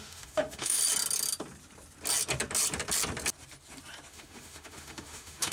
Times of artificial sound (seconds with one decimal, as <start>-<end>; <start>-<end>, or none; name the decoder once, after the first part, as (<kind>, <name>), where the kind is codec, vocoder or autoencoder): 0.0-0.8 (autoencoder, DAC-VAE); 4.1-5.5

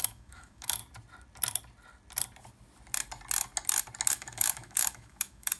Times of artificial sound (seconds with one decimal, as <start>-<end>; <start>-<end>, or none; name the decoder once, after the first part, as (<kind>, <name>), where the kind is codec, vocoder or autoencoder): 0.0-0.8 (autoencoder, DAC-VAE); 4.1-5.6